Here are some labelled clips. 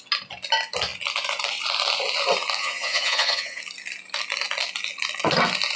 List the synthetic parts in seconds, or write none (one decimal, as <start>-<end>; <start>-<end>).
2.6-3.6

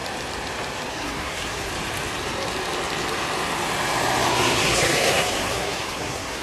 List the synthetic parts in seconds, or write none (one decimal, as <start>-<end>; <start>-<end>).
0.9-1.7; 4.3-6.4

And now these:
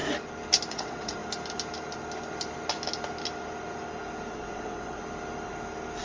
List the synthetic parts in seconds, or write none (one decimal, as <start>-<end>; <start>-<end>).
0.7-1.2; 4.3-5.0

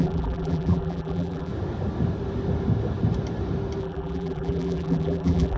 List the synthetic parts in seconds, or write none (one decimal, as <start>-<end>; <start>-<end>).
0.0-1.5; 3.8-5.6